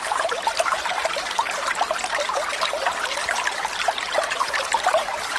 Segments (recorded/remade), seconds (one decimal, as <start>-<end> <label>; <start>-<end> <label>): 0.0-1.4 remade; 1.4-4.6 recorded; 4.6-5.4 remade